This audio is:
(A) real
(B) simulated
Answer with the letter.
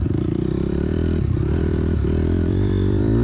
B